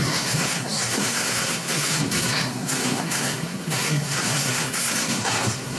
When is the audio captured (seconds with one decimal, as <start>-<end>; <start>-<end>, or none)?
none